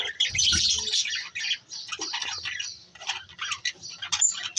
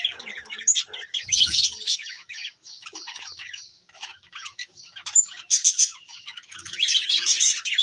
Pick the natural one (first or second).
first